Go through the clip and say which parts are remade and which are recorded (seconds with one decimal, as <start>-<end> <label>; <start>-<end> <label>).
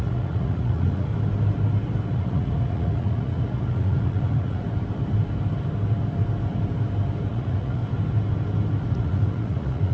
0.0-1.1 remade; 1.1-2.1 recorded; 2.1-4.6 remade; 4.6-7.3 recorded; 7.3-7.8 remade; 7.8-8.9 recorded; 8.9-9.9 remade